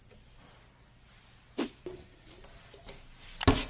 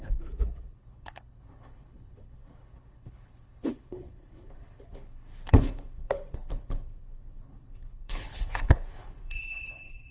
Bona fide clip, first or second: first